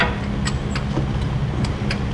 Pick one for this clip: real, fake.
real